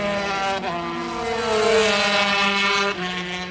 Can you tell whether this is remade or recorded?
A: recorded